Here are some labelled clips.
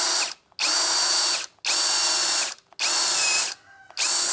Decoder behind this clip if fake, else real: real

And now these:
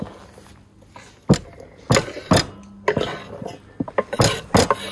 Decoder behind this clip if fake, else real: real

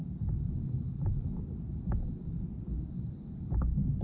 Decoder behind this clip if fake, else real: real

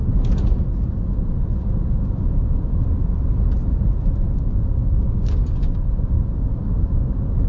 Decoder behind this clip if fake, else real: fake, vocoder, BigVGAN v2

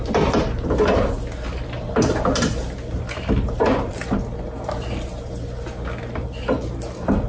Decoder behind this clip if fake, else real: real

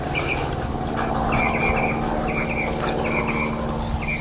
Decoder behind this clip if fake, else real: real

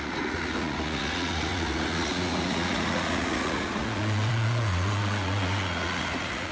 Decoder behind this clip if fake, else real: fake, vocoder, Vocos